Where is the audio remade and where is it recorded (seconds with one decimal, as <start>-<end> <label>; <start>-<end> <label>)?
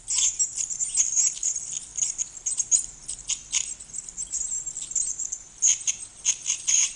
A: 0.0-7.0 recorded